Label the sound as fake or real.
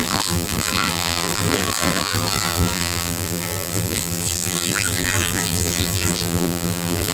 fake